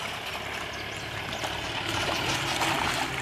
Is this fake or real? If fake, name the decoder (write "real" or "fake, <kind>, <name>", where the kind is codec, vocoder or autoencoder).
real